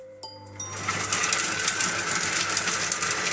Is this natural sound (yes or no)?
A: yes